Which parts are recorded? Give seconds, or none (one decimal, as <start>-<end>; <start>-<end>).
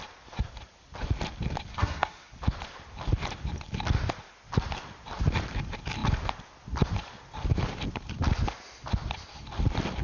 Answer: 0.0-1.7; 2.3-10.0